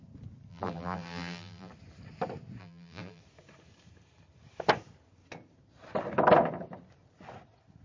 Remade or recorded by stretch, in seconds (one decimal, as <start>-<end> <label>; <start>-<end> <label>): 0.0-0.5 recorded; 0.5-1.7 remade; 1.7-2.6 recorded; 2.6-3.2 remade; 3.2-7.8 recorded